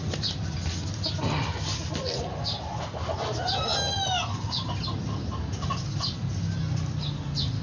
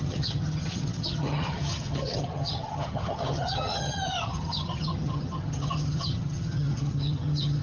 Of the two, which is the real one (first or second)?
first